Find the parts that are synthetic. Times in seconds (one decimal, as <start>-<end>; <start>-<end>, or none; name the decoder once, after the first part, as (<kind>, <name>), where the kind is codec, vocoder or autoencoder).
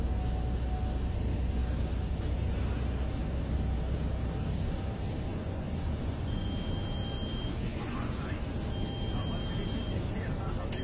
5.3-6.5 (vocoder, Vocos); 7.7-8.4